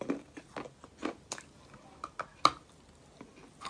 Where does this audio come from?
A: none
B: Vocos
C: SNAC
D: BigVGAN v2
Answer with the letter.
A